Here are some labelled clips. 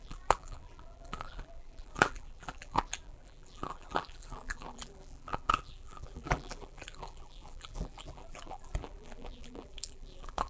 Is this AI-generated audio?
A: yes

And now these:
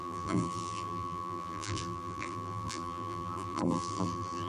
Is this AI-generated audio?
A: yes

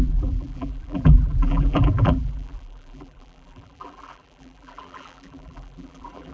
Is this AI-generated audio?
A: yes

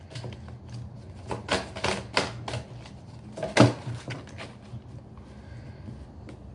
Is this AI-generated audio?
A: no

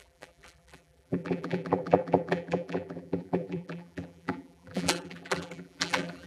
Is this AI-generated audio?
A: yes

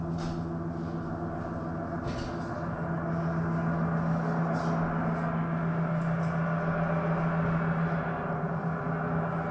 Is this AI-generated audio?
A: no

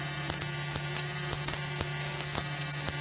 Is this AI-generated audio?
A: no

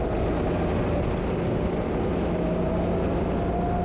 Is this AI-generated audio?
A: no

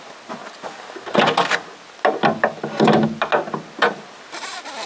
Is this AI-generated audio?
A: no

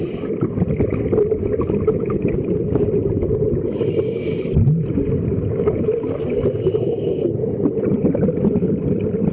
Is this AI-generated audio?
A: no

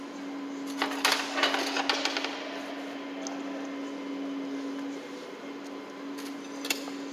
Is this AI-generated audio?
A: no